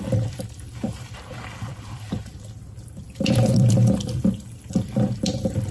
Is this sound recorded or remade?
remade